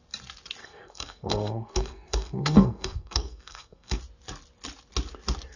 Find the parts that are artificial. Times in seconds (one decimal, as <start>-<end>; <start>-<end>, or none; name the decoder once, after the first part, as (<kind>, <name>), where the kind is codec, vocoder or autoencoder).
0.6-4.0 (codec, SNAC)